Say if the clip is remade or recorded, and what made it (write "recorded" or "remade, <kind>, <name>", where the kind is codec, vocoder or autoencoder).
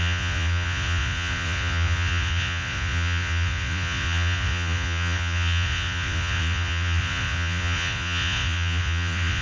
remade, vocoder, Vocos